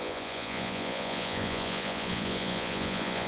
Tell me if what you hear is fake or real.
fake